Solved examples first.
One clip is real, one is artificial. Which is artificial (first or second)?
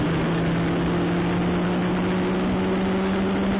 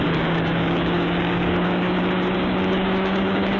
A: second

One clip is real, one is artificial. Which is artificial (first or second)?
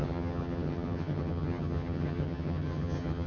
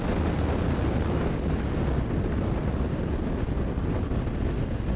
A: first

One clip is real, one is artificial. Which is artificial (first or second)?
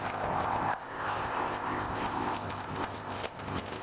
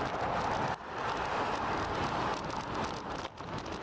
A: first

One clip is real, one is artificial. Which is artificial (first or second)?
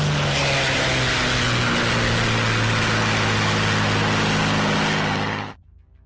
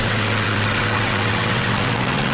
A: second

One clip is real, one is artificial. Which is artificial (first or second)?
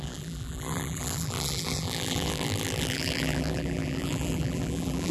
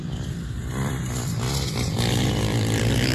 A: first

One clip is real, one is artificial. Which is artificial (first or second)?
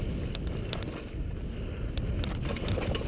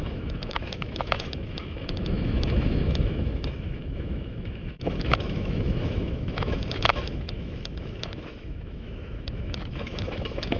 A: second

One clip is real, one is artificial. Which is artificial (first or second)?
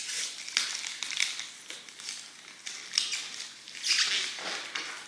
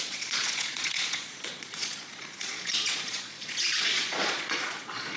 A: second